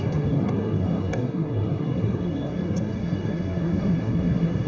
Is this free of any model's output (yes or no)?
no